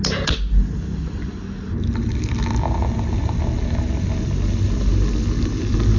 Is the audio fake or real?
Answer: real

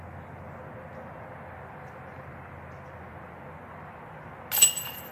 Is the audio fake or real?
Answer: real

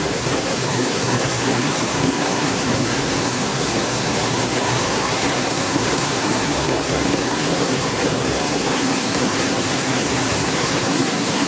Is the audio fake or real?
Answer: fake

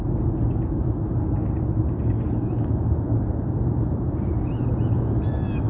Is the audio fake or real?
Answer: real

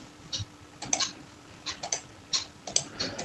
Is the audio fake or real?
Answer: real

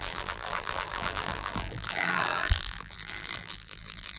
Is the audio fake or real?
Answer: fake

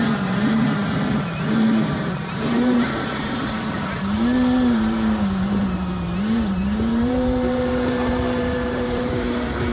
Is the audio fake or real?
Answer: fake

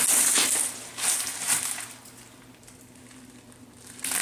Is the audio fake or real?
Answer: fake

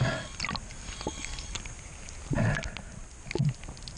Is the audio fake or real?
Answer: real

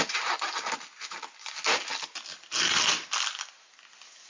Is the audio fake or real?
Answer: real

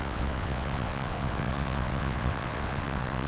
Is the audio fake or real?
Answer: fake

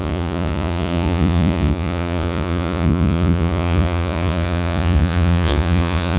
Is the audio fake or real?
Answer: fake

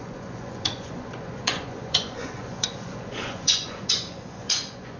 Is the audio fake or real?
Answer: fake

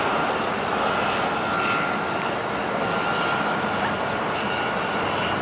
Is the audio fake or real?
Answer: real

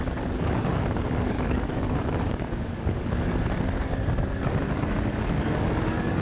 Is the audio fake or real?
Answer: fake